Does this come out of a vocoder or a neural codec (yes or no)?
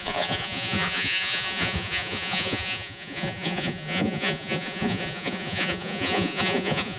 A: yes